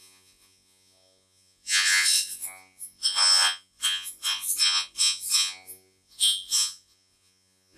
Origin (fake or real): fake